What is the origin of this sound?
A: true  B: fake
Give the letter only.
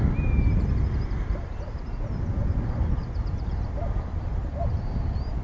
A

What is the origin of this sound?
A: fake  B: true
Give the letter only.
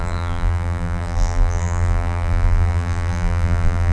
A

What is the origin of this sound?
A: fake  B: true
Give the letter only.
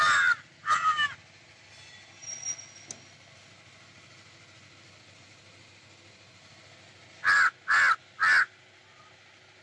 B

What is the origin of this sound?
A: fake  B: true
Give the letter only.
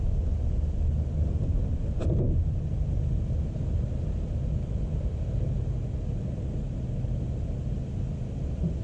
B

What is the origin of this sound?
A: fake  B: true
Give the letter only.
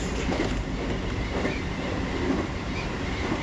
B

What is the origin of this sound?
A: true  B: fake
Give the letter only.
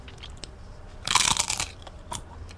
A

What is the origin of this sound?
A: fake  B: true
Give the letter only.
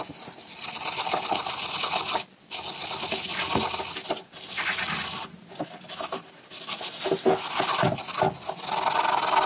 B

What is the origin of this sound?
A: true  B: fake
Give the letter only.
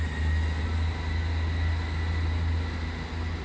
A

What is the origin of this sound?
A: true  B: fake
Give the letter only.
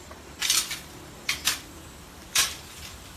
B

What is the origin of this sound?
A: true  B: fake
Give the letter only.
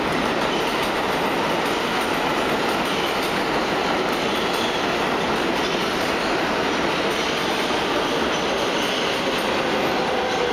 A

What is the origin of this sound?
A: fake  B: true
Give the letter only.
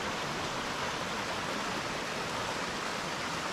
B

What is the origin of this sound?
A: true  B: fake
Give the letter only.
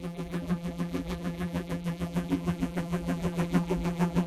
B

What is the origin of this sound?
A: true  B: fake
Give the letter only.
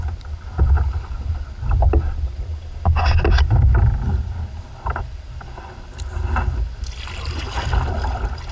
A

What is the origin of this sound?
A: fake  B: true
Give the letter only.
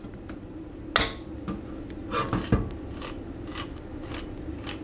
B